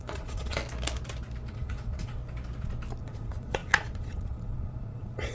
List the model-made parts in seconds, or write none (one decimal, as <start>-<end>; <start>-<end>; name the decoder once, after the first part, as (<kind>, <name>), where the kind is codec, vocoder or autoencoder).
0.0-0.6 (vocoder, Vocos); 1.5-2.2; 3.0-5.3